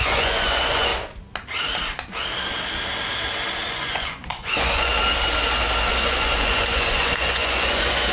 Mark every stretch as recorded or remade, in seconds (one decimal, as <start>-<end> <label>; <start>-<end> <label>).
0.0-0.9 remade; 0.9-3.7 recorded; 3.7-4.9 remade; 4.9-5.9 recorded; 5.9-8.1 remade